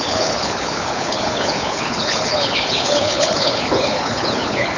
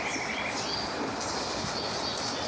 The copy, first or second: first